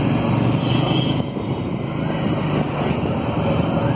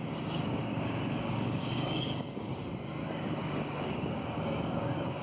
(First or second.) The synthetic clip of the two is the second